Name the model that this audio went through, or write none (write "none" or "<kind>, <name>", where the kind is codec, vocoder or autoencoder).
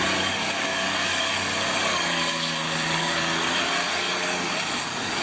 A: codec, DAC